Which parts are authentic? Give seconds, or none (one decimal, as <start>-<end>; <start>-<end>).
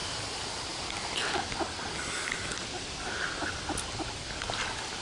0.0-5.0